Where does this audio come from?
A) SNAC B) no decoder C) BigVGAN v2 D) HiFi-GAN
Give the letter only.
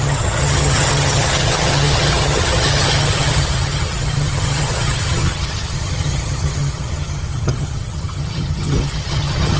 D